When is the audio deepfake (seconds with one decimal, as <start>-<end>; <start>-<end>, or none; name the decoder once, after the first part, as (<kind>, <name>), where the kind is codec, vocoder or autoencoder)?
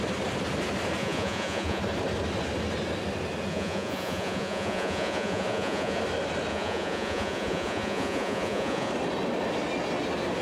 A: 1.0-1.8 (vocoder, Vocos); 3.5-6.0; 6.5-8.9